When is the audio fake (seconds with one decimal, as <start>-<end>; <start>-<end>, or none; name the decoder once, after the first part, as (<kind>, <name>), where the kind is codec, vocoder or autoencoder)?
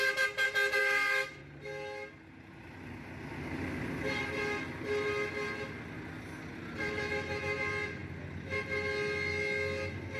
0.8-1.4 (autoencoder, DAC-VAE)